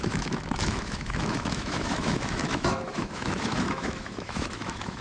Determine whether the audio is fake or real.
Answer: fake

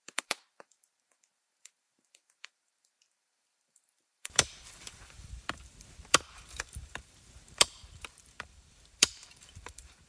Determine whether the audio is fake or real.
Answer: fake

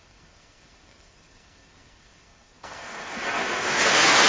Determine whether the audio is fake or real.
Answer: fake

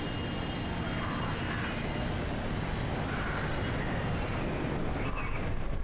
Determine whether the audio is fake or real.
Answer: real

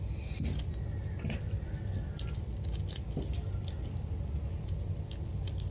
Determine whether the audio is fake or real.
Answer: real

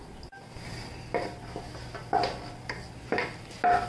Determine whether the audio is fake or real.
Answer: real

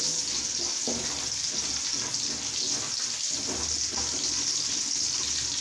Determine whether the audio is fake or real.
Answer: real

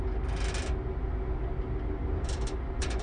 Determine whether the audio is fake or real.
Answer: real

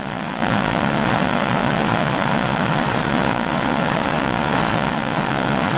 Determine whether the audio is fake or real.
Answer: fake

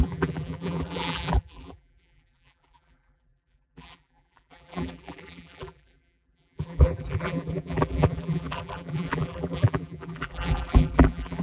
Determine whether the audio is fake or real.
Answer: fake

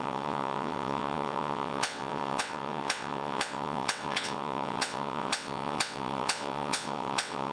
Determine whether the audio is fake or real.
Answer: fake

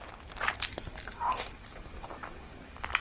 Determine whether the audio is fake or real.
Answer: real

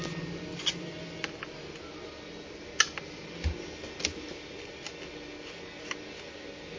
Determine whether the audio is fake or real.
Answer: real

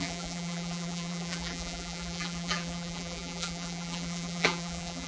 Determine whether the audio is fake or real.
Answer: fake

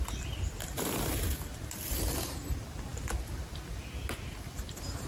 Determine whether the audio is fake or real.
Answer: real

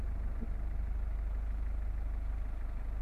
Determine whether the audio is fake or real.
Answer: real